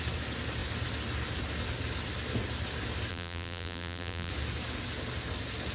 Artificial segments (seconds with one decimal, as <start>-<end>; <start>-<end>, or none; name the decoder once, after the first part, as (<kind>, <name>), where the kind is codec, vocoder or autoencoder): 3.1-4.3 (vocoder, BigVGAN v2)